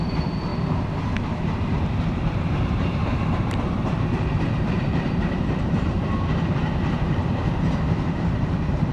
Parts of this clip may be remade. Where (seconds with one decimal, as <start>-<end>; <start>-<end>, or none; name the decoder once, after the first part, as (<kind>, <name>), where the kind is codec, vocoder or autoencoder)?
0.0-0.5 (vocoder, BigVGAN v2); 1.3-8.9